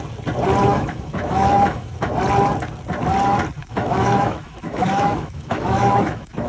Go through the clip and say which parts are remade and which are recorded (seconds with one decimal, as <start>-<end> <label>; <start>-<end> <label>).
0.0-0.6 recorded; 0.6-2.1 remade; 2.1-3.6 recorded; 3.6-6.5 remade